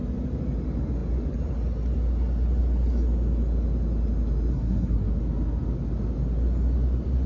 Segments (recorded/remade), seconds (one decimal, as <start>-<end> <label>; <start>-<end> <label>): 0.0-4.5 recorded; 4.5-5.1 remade; 5.1-7.3 recorded